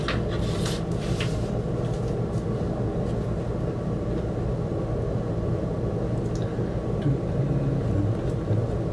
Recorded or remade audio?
recorded